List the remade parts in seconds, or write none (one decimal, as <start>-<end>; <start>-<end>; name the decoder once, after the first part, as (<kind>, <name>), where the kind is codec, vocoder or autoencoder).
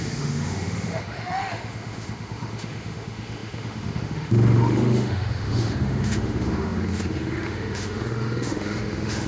0.0-9.3 (autoencoder, DAC-VAE)